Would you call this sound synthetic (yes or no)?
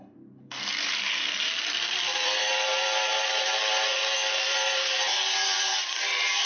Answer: yes